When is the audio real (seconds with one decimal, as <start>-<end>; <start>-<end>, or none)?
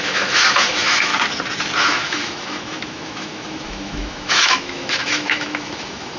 1.1-1.9